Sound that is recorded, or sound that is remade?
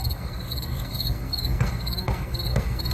remade